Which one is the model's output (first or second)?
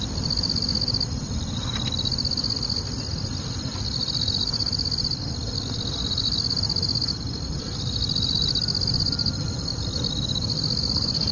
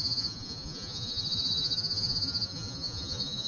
second